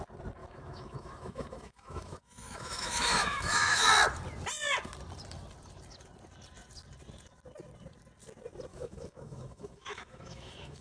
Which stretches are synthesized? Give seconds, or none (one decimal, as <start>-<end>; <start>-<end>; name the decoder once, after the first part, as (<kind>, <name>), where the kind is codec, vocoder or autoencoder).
0.4-3.9 (autoencoder, DAC-VAE); 8.7-10.8